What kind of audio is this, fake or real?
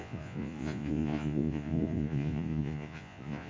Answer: fake